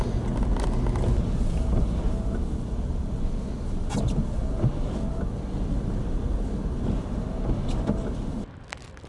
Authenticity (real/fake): real